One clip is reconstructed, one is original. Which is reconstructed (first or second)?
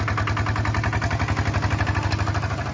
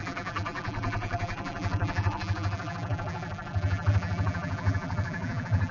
second